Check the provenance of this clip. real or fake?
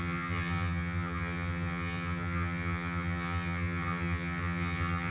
fake